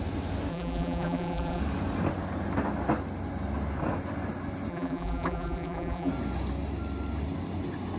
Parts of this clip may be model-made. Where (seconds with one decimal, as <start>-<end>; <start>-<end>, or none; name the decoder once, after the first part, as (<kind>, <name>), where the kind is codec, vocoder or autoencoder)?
0.5-1.6 (vocoder, BigVGAN v2); 4.7-6.1